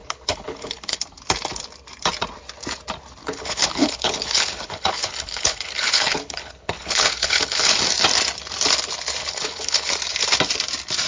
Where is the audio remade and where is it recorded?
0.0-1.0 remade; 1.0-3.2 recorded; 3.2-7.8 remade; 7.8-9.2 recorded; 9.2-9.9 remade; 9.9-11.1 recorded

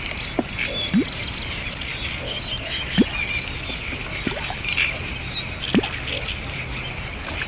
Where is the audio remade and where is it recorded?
0.0-7.5 recorded

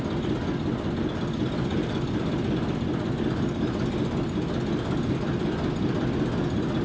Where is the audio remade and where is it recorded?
0.0-4.0 recorded; 4.0-5.1 remade; 5.1-6.8 recorded

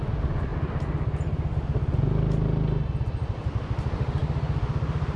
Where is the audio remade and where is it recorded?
0.0-5.2 recorded

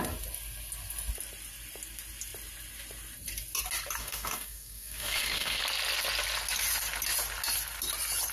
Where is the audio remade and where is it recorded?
0.0-4.0 recorded; 4.0-5.6 remade; 5.6-8.3 recorded